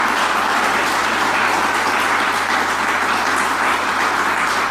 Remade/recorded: recorded